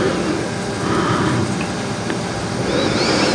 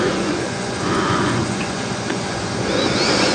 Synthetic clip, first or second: second